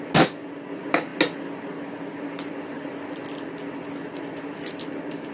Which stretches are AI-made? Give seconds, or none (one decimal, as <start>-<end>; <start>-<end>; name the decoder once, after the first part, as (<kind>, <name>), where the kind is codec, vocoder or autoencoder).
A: none